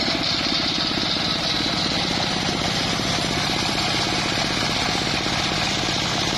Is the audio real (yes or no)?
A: yes